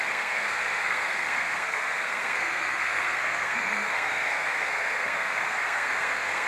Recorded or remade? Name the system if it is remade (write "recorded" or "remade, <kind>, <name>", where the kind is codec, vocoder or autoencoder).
remade, codec, SNAC